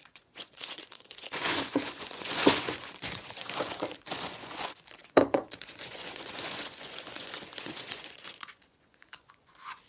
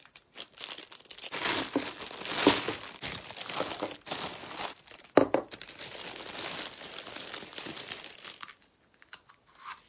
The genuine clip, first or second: second